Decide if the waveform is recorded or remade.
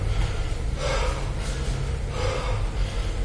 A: recorded